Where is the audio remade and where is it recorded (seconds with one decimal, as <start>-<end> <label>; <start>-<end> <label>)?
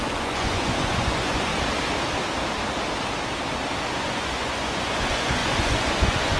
0.0-1.5 remade; 1.5-3.9 recorded; 3.9-6.4 remade